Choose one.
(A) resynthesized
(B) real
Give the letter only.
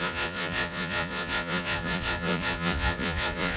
A